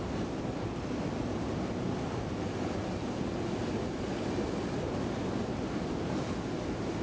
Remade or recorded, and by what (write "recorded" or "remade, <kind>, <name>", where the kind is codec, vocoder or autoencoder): recorded